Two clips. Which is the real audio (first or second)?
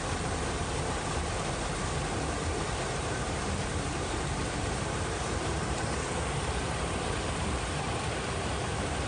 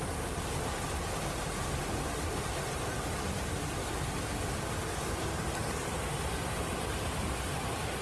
second